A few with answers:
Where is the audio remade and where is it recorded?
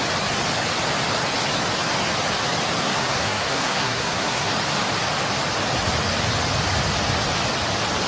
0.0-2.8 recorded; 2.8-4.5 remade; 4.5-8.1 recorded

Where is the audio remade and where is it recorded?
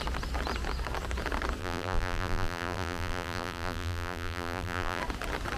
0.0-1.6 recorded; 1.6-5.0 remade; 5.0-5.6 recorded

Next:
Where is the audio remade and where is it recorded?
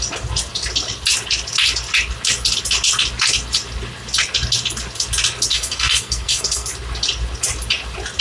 0.0-5.5 recorded; 5.5-6.7 remade; 6.7-8.2 recorded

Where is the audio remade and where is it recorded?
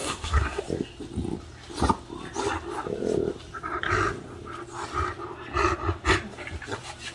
0.0-0.6 remade; 0.6-7.1 recorded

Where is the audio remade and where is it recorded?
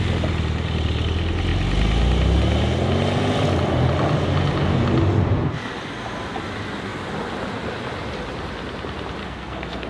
0.0-9.2 recorded; 9.2-9.9 remade